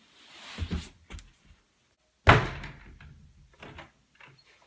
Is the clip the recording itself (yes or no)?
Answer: yes